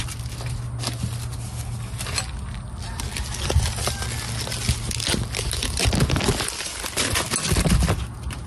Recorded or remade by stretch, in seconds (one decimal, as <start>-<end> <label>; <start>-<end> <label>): 0.0-8.5 recorded